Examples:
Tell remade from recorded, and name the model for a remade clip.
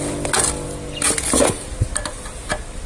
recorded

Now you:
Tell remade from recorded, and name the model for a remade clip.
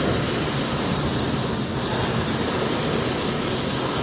recorded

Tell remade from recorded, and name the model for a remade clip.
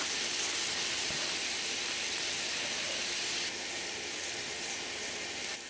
recorded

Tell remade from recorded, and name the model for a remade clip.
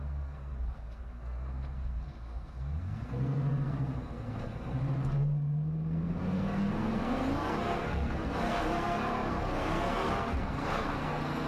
remade, codec, SNAC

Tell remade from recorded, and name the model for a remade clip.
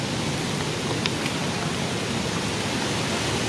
recorded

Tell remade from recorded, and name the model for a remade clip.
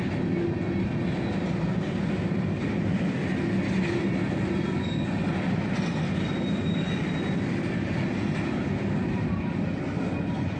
recorded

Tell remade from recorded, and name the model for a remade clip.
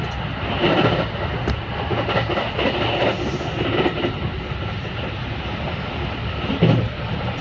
recorded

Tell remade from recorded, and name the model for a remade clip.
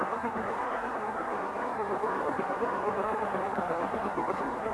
remade, codec, SNAC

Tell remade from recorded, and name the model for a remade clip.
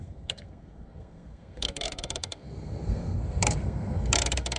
remade, codec, SNAC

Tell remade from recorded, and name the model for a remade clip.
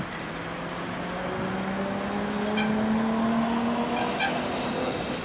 recorded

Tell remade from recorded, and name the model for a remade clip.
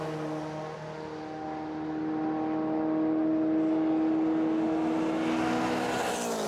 recorded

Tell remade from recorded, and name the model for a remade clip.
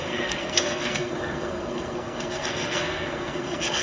remade, codec, SNAC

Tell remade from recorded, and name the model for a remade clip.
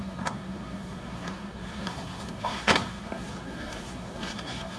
remade, codec, SNAC